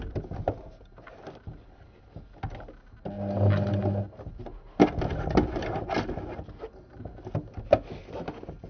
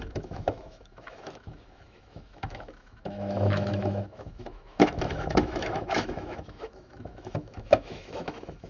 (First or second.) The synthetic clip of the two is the second